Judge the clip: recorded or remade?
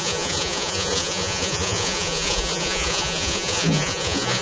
remade